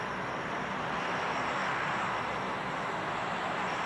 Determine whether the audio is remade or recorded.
recorded